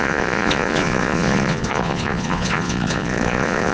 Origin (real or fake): fake